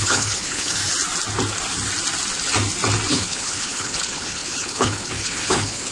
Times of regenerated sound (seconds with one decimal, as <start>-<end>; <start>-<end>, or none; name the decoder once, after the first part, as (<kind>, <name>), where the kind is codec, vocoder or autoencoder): 0.0-0.8 (codec, HILCodec); 3.1-5.9

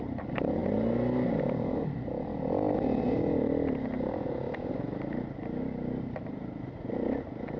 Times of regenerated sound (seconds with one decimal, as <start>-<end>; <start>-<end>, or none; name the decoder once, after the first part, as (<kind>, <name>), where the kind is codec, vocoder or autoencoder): none

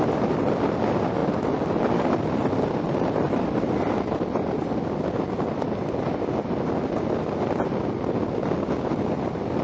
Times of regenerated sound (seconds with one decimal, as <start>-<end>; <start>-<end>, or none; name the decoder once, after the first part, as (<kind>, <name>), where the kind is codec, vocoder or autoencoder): none

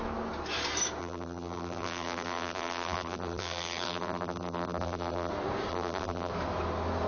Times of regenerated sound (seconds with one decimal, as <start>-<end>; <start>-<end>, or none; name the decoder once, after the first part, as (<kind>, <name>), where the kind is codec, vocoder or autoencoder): 1.0-5.3 (vocoder, BigVGAN v2); 5.7-6.3

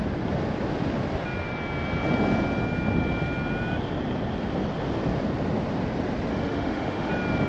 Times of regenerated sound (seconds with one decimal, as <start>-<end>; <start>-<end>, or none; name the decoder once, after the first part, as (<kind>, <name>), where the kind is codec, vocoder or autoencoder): 6.3-7.1 (autoencoder, DAC-VAE)

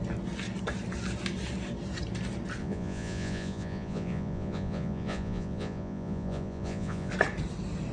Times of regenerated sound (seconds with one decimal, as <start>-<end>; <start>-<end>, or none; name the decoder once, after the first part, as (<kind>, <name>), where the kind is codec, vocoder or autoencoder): 2.6-7.1 (vocoder, Vocos)